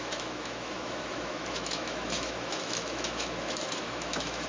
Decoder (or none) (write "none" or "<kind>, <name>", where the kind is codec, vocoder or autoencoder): autoencoder, DAC-VAE